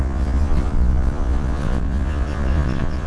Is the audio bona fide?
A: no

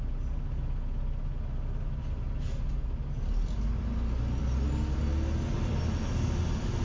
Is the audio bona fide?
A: yes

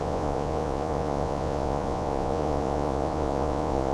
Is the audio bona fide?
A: no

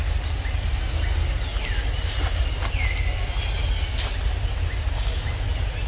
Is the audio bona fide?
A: yes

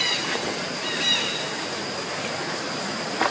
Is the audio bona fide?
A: yes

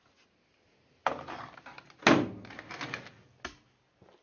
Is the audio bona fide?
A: yes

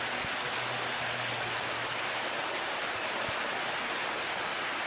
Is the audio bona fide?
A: yes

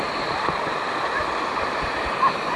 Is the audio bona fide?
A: yes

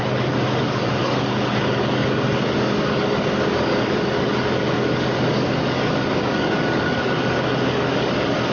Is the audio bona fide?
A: no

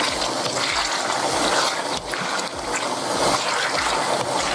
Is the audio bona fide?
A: yes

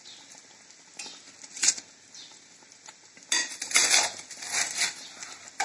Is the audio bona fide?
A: yes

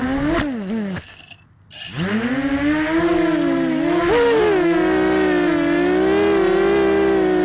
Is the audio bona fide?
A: yes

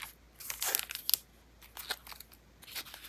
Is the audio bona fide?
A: yes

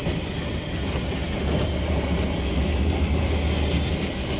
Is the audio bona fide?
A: yes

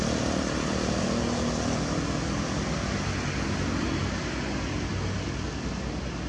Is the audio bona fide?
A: yes